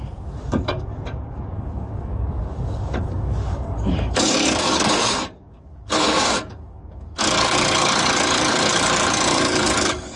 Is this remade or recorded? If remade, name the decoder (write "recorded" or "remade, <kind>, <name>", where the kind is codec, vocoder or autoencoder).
remade, codec, DAC